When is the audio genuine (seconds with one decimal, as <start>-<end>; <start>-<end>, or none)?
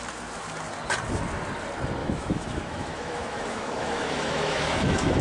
0.0-2.0